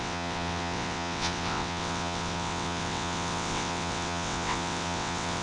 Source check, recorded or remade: remade